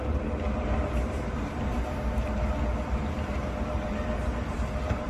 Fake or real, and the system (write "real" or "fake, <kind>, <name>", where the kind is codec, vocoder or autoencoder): fake, vocoder, BigVGAN v2